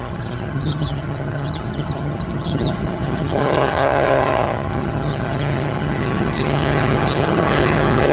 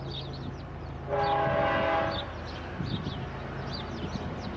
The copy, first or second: first